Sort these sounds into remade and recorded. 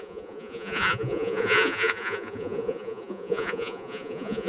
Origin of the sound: remade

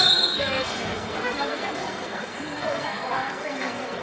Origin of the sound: remade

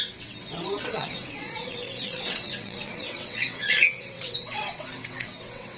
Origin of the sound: remade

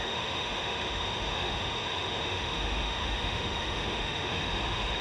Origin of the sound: remade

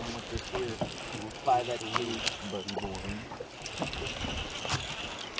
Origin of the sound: recorded